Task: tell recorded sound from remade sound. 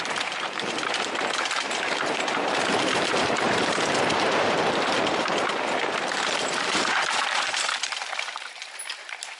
remade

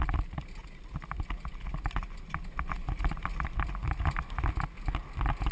recorded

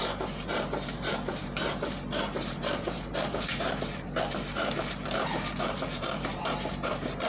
remade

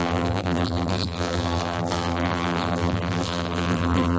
remade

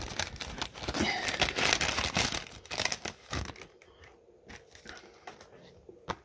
recorded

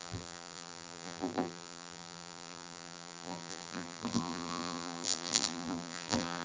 remade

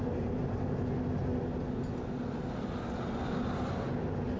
recorded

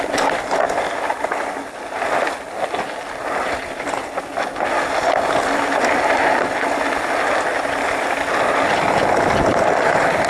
recorded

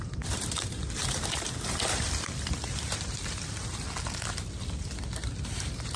remade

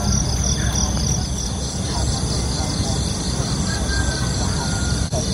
recorded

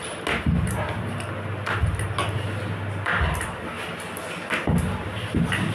recorded